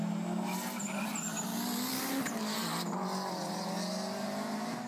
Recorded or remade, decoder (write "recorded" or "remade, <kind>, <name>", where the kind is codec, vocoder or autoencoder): recorded